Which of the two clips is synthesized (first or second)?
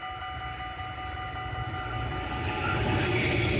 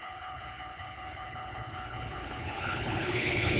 second